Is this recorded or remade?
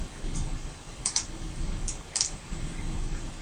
remade